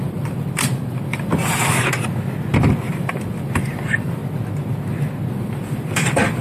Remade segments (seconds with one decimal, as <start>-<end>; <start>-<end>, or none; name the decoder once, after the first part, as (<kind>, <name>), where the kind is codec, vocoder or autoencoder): 0.0-1.4 (vocoder, BigVGAN v2); 2.9-4.2; 5.3-6.4